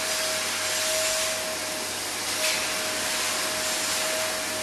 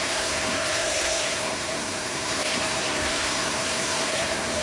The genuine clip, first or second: first